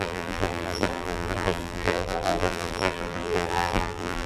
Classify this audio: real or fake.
fake